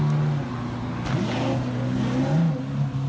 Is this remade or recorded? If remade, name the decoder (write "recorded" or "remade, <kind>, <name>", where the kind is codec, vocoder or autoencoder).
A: recorded